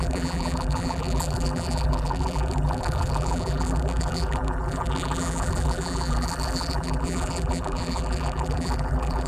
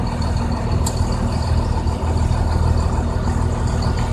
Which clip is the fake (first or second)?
first